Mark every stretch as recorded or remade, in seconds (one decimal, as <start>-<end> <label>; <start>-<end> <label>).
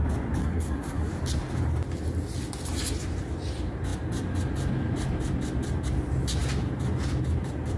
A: 0.0-0.4 recorded; 0.4-1.1 remade; 1.1-7.8 recorded